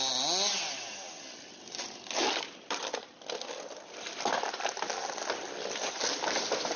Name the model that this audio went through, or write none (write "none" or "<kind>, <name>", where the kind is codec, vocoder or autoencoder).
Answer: none